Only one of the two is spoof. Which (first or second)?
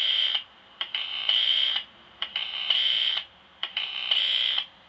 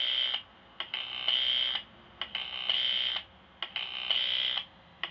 first